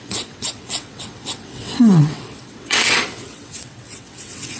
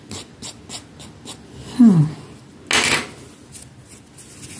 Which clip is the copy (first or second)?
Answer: first